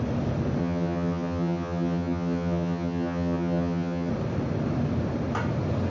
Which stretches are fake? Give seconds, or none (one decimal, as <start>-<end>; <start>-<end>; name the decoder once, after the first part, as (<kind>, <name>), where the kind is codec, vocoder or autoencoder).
0.6-4.1 (vocoder, HiFi-GAN)